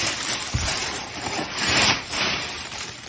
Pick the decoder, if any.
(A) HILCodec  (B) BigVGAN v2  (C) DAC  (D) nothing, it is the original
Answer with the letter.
B